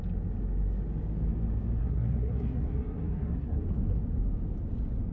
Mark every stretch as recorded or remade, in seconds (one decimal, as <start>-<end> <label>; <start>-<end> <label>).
0.0-1.8 recorded; 1.8-3.6 remade; 3.6-5.1 recorded

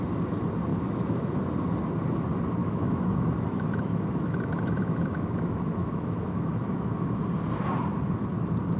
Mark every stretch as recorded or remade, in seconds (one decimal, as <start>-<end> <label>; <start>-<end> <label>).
0.0-0.7 recorded; 0.7-1.3 remade; 1.3-2.6 recorded; 2.6-7.2 remade; 7.2-8.8 recorded

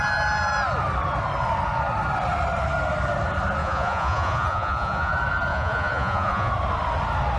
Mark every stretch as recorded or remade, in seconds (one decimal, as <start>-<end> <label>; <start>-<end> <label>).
0.0-3.6 recorded; 3.6-5.1 remade; 5.1-5.5 recorded; 5.5-6.5 remade; 6.5-7.4 recorded

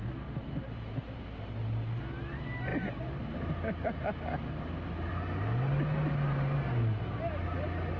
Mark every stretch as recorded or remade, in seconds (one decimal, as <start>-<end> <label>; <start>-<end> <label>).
0.0-8.0 recorded